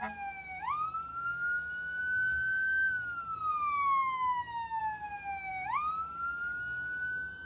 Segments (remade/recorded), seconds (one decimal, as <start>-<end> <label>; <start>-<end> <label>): 0.0-1.1 recorded; 1.1-2.0 remade; 2.0-4.0 recorded; 4.0-4.8 remade; 4.8-7.5 recorded